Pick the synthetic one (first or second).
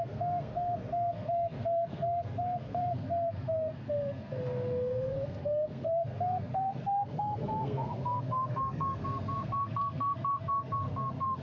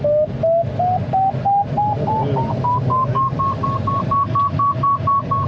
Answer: first